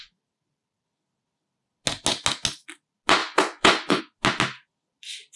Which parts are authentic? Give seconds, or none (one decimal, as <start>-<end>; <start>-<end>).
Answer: 0.0-3.2; 4.0-5.4